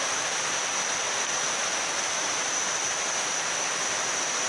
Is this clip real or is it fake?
real